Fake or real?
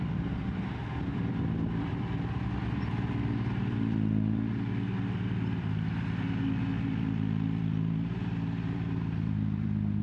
fake